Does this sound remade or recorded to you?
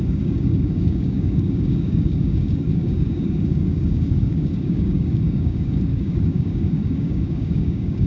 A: remade